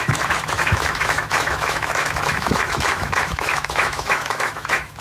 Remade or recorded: remade